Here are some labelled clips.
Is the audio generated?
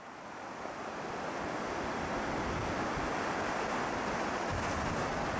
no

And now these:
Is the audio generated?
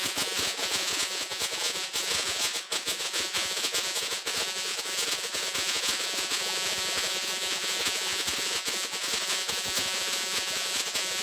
yes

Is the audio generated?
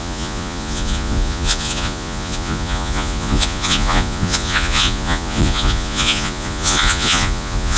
yes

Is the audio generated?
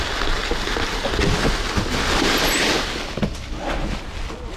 no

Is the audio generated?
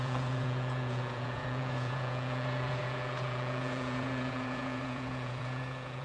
yes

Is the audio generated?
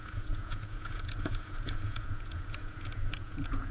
yes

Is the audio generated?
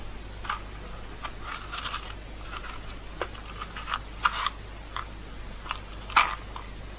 no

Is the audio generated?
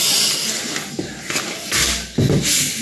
no